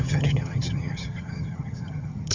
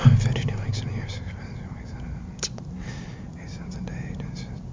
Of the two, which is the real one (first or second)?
second